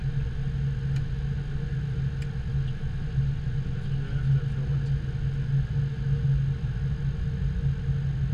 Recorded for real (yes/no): yes